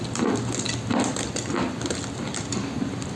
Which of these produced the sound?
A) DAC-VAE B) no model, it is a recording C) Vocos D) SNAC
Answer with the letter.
B